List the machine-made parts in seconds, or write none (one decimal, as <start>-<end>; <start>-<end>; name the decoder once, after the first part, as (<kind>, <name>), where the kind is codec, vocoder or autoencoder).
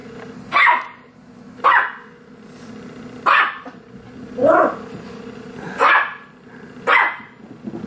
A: none